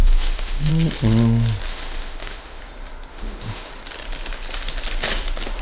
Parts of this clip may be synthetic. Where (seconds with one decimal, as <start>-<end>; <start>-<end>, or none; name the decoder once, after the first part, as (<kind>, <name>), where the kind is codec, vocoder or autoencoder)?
0.0-0.7 (autoencoder, DAC-VAE); 1.7-2.6; 3.1-3.7